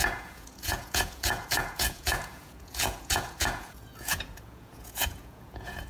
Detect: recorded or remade remade